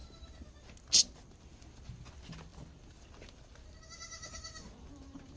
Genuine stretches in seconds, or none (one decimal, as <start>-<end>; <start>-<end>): 0.0-5.4